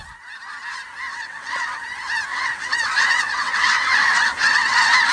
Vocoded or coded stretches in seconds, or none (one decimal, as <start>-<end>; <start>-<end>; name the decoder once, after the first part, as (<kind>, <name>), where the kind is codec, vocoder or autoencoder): 1.1-1.8 (vocoder, WaveNeXt); 2.3-5.1